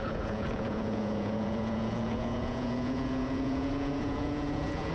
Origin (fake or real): fake